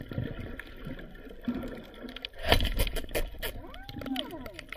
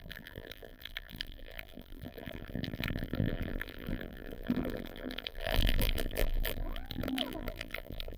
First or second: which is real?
first